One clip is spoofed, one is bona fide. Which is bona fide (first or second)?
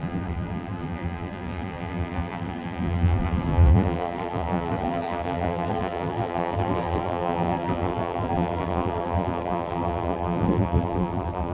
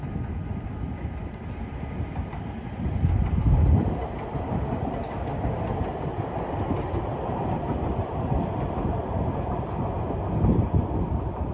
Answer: second